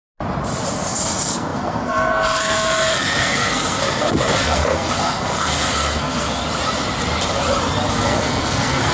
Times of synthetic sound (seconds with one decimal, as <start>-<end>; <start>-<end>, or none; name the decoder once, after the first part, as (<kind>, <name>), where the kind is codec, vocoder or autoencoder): 0.7-6.4 (codec, SNAC); 7.9-8.9